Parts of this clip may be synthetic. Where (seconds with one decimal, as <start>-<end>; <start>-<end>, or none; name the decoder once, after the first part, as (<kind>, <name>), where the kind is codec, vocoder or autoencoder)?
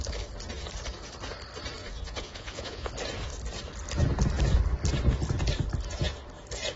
1.8-2.9 (vocoder, Vocos)